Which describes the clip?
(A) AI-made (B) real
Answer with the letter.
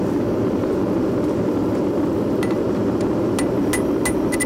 B